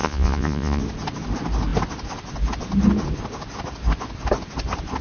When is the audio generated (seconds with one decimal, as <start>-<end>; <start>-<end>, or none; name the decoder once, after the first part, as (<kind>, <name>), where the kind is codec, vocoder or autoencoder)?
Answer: 0.0-0.8 (vocoder, Vocos)